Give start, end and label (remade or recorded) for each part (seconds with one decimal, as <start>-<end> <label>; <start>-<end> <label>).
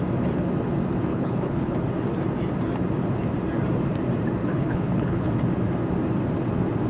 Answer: 0.0-1.1 recorded; 1.1-1.8 remade; 1.8-4.4 recorded; 4.4-5.3 remade; 5.3-6.9 recorded